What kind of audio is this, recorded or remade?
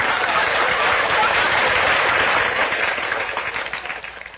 remade